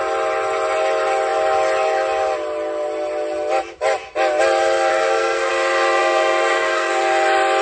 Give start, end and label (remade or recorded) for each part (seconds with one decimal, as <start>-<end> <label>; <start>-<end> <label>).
0.0-4.9 recorded; 4.9-5.5 remade; 5.5-6.0 recorded; 6.0-6.9 remade; 6.9-7.6 recorded